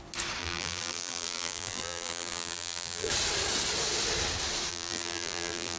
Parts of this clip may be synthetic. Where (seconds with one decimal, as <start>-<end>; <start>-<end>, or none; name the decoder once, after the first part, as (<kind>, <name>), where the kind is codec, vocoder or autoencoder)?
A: 0.4-3.1 (vocoder, BigVGAN v2); 4.7-5.8